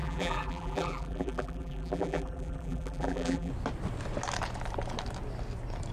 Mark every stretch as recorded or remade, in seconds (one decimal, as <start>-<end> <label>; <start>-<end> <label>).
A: 0.0-3.5 remade; 3.5-5.9 recorded